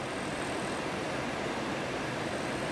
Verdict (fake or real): real